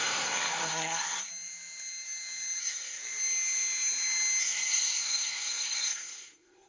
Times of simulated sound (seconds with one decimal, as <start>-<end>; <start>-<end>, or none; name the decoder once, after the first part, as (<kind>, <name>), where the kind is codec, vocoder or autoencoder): 0.0-1.3 (codec, SNAC); 2.6-3.0; 4.4-6.7